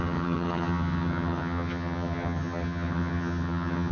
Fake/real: fake